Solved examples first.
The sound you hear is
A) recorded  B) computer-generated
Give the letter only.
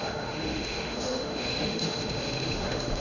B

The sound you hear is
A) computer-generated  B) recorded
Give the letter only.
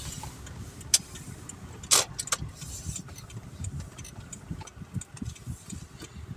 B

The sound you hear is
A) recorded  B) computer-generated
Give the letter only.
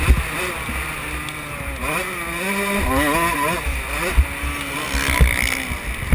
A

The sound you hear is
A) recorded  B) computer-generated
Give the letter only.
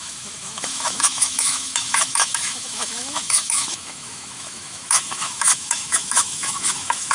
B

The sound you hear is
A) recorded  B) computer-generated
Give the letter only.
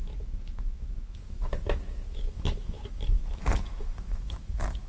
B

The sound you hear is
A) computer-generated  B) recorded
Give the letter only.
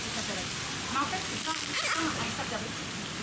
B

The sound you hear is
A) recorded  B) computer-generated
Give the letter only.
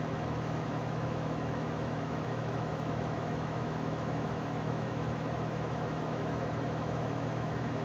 B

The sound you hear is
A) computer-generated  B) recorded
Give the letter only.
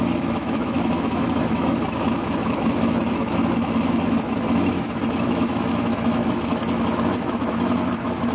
A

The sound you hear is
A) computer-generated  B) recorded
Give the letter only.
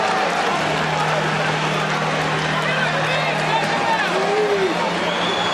B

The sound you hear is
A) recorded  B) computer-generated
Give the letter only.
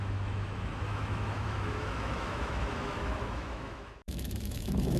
B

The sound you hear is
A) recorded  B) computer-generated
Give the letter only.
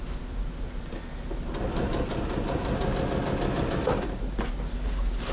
A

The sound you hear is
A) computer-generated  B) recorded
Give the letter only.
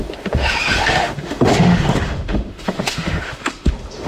A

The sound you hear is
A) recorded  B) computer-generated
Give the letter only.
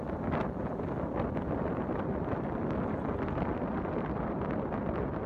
A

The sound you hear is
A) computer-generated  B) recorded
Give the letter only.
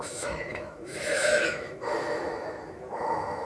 A